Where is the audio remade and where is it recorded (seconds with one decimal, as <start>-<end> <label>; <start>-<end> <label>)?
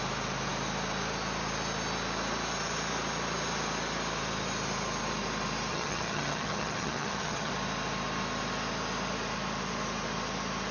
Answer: 0.0-5.7 recorded; 5.7-7.5 remade; 7.5-10.7 recorded